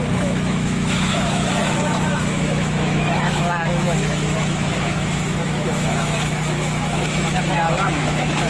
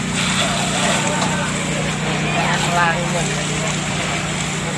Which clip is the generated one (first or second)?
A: first